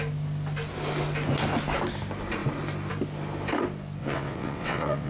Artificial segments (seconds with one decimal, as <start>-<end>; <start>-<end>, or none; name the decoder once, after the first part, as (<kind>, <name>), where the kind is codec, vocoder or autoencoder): 4.0-5.1 (vocoder, WaveNeXt)

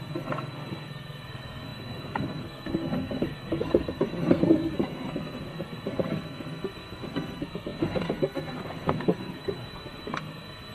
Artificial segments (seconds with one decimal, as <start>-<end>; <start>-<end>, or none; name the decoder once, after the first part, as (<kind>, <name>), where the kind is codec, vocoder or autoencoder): 0.0-10.7 (codec, SNAC)